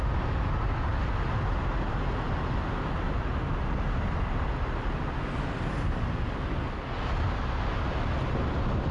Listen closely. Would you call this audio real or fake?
real